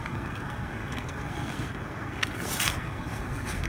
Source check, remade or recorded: remade